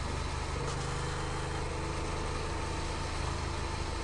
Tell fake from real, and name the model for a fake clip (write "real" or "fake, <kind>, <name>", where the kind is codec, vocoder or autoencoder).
real